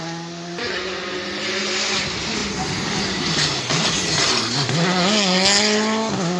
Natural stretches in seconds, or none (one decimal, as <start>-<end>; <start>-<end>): 0.0-6.4